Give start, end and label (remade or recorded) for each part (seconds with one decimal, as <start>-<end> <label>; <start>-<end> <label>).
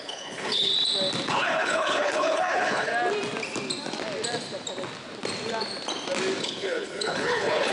0.0-0.7 remade; 0.7-1.3 recorded; 1.3-2.9 remade; 2.9-6.4 recorded; 6.4-7.7 remade